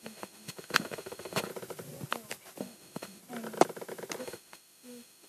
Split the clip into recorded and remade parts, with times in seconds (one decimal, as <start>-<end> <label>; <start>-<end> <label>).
0.0-1.5 remade; 1.5-2.6 recorded; 2.6-3.2 remade; 3.2-4.2 recorded; 4.2-5.3 remade